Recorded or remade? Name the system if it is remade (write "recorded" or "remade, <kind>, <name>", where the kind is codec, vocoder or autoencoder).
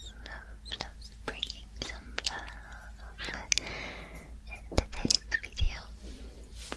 recorded